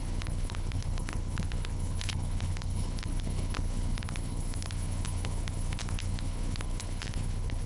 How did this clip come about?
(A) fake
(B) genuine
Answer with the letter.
A